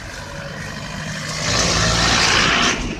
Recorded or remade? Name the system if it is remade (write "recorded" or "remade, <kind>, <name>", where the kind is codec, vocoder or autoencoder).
recorded